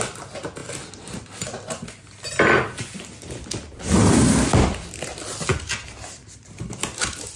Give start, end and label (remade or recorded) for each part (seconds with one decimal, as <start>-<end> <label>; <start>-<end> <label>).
0.0-7.4 recorded